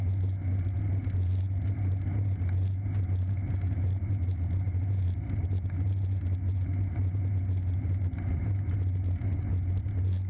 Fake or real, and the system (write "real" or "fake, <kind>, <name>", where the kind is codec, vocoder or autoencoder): real